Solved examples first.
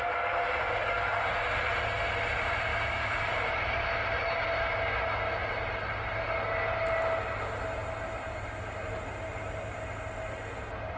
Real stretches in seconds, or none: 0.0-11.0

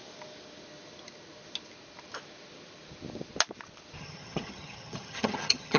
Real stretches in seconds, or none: 0.0-4.0

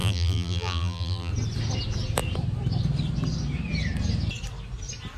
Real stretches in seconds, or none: 1.3-5.2